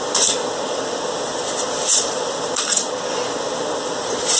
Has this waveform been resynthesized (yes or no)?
no